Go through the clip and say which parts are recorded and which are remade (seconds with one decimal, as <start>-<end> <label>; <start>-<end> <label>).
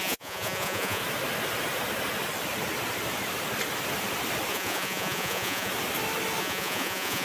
0.0-1.0 remade; 1.0-4.5 recorded; 4.5-5.7 remade; 5.7-6.4 recorded; 6.4-7.2 remade